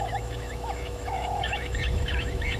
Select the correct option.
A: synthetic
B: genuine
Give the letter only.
A